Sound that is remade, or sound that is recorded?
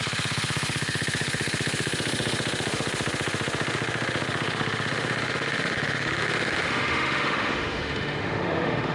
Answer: remade